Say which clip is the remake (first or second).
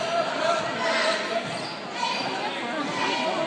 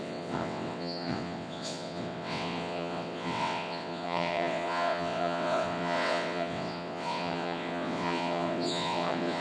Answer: second